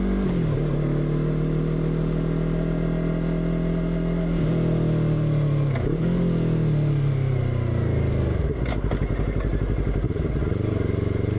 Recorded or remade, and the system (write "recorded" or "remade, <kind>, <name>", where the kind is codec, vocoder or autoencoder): recorded